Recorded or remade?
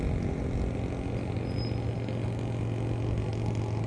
recorded